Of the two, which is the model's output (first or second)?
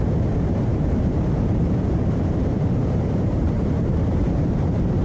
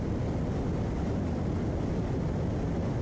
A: first